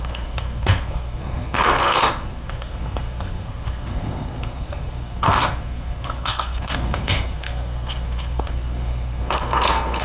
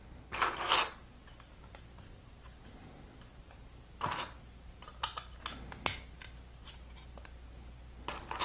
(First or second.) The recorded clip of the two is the second